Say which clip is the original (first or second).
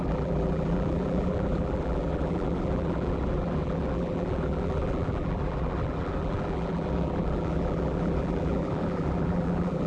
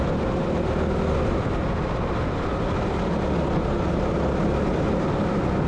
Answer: second